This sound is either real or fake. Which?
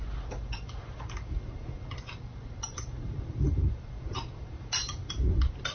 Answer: real